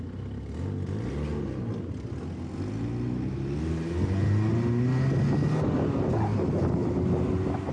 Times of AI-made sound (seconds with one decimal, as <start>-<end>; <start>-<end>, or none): none